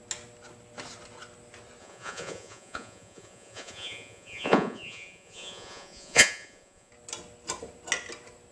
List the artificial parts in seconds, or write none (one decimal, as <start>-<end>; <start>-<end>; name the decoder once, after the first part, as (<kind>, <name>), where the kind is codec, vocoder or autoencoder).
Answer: 1.8-6.9 (vocoder, Vocos)